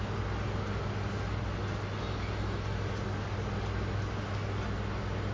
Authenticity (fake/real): real